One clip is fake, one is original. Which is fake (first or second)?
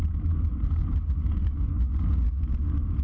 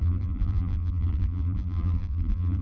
second